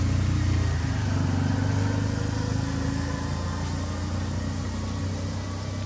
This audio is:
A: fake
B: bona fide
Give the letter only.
B